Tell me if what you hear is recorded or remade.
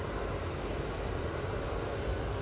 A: recorded